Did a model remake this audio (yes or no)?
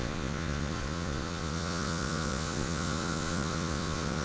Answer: yes